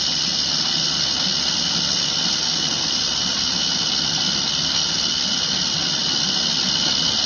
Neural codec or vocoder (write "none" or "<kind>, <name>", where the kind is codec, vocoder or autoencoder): none